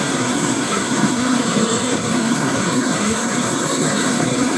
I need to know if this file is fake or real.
fake